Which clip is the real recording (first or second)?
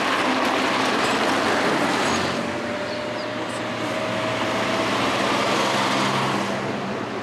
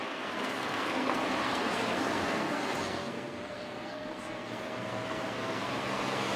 first